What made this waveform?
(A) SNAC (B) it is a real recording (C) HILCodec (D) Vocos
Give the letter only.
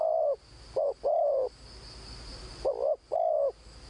B